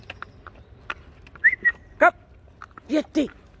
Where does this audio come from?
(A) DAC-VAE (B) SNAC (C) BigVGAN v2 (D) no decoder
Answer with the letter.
D